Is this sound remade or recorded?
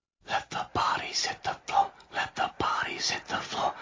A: recorded